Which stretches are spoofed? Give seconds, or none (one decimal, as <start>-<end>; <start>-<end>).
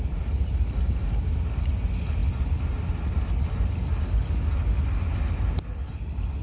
none